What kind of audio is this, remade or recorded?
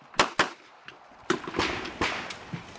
recorded